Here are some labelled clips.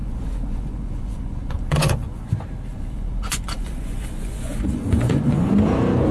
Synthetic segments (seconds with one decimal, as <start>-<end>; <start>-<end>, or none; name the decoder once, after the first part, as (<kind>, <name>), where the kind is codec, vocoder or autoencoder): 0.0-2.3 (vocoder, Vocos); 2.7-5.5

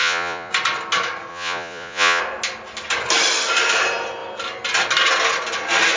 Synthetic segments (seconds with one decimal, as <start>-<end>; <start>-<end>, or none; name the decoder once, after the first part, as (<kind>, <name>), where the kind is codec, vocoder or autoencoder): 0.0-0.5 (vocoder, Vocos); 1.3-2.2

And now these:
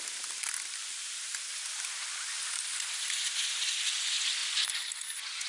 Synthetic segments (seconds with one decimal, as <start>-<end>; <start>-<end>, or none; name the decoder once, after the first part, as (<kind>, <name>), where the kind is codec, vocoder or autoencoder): none

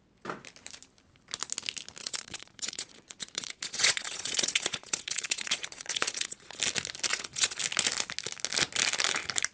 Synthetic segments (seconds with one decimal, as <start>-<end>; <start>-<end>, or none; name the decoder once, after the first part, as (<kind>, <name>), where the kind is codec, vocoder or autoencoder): 2.0-6.6 (vocoder, Vocos); 7.1-7.6

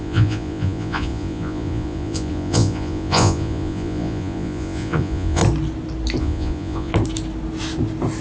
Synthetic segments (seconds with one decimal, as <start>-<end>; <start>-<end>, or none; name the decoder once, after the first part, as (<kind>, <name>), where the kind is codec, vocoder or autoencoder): 0.0-5.4 (vocoder, Vocos); 6.2-6.9

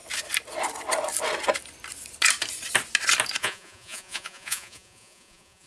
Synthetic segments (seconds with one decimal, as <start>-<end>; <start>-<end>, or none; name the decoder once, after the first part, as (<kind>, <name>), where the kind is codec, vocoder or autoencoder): 3.4-5.7 (vocoder, Vocos)